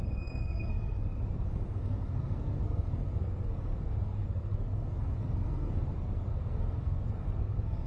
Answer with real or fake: fake